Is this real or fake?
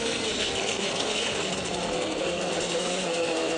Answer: fake